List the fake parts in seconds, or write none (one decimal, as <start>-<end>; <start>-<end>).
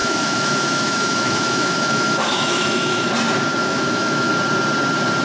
0.0-3.1; 3.6-4.3